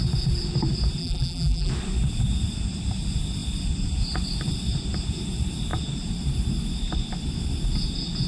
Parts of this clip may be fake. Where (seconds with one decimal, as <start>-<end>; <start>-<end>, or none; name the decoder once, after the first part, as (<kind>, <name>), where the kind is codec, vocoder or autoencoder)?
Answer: 1.0-1.7 (vocoder, BigVGAN v2)